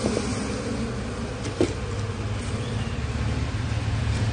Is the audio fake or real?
real